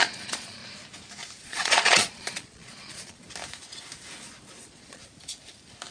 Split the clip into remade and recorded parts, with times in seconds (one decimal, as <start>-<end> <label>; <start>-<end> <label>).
0.0-0.6 remade; 0.6-1.4 recorded; 1.4-3.2 remade; 3.2-4.6 recorded; 4.6-5.0 remade; 5.0-5.9 recorded